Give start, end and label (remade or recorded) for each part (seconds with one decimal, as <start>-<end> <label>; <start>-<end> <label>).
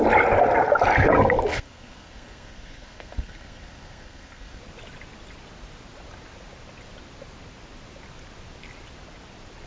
0.0-1.5 recorded; 1.5-4.6 remade; 4.6-9.7 recorded